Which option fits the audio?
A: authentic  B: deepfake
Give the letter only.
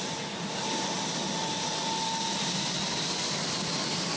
A